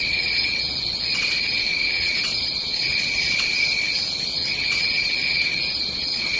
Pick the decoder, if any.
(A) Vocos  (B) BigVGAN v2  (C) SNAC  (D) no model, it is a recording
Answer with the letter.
A